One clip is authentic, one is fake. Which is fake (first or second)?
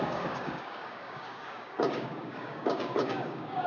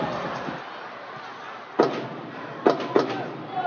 first